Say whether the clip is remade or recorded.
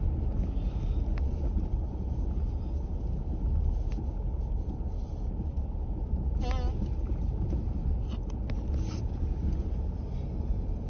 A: recorded